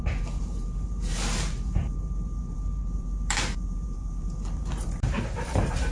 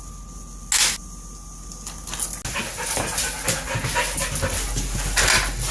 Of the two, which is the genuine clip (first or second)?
second